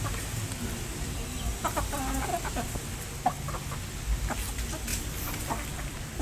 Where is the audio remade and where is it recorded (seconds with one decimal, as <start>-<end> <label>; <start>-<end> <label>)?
0.0-6.2 recorded